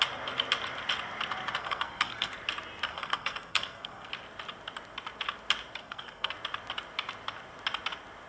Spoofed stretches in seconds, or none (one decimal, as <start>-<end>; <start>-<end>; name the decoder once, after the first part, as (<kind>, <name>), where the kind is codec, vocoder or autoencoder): 1.6-2.3 (codec, SNAC); 2.9-4.1; 5.8-6.3